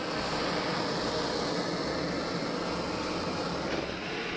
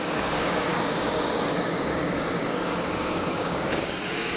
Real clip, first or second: first